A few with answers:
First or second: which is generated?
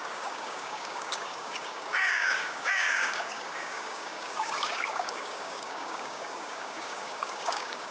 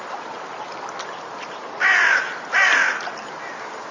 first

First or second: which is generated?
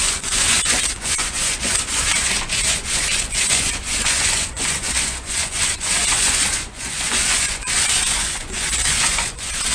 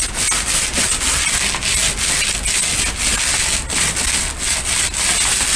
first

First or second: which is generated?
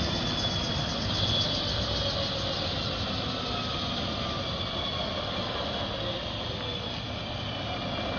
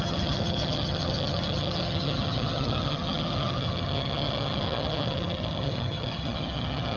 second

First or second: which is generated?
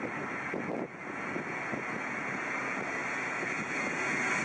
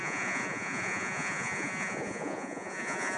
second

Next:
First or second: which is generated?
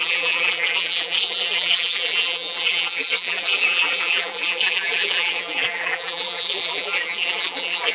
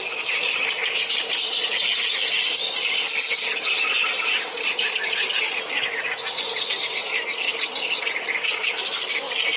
first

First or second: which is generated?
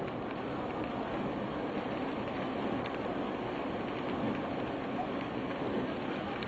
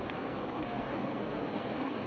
second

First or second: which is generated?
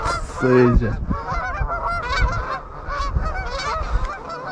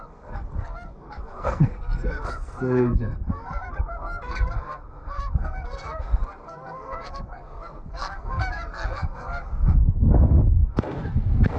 second